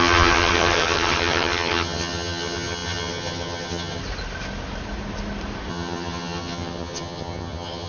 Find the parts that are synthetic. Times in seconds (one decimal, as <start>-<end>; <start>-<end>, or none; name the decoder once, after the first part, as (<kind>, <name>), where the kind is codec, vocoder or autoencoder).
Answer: 0.0-4.0 (vocoder, HiFi-GAN); 5.7-7.9